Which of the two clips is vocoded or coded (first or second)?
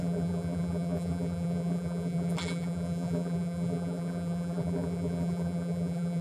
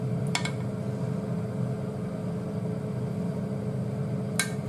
first